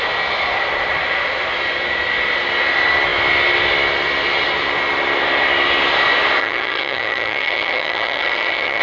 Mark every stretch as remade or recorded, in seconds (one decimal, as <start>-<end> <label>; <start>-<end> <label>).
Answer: 0.0-6.4 recorded; 6.4-8.8 remade

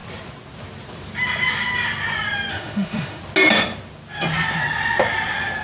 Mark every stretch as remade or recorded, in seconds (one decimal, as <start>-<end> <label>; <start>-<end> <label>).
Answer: 0.0-2.5 recorded; 2.5-3.2 remade; 3.2-5.6 recorded